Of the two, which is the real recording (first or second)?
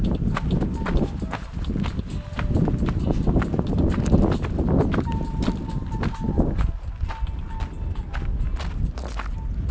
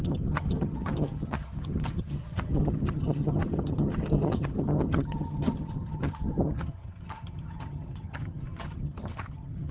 first